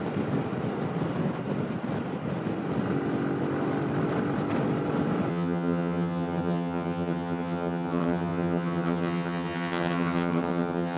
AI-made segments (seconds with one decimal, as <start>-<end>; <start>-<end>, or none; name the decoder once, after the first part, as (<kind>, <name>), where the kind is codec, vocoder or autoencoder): 5.3-11.0 (vocoder, HiFi-GAN)